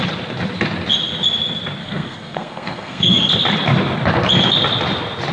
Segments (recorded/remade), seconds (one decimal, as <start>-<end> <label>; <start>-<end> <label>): 0.0-1.8 recorded; 1.8-3.2 remade; 3.2-5.3 recorded